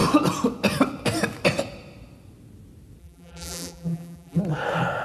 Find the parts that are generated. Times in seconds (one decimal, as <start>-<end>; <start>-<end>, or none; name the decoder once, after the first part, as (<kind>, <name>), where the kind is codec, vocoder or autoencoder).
3.0-4.4 (vocoder, BigVGAN v2)